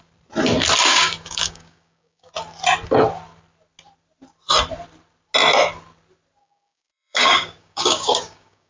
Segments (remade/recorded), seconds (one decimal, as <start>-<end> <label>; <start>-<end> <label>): 0.0-0.9 recorded; 0.9-2.3 remade; 2.3-6.4 recorded; 6.4-8.7 remade